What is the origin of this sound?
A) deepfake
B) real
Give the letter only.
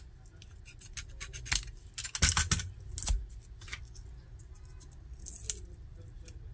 B